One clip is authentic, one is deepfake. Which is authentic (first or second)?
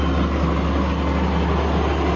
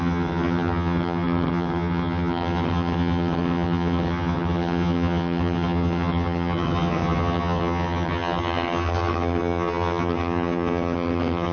first